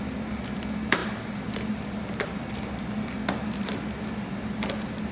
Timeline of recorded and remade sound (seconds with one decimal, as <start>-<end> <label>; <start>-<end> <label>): 0.0-5.1 recorded